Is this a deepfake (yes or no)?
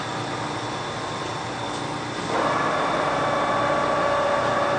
no